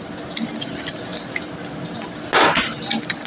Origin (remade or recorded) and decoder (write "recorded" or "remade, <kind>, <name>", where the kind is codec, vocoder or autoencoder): recorded